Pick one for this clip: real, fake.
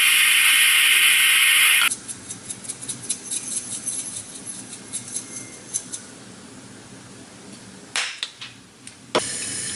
real